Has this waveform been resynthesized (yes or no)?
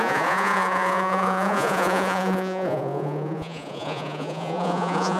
yes